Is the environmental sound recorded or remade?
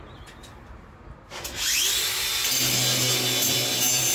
recorded